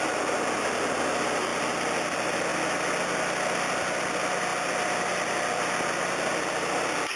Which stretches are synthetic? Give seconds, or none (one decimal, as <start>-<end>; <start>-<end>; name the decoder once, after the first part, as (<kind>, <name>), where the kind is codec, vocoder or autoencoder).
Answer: none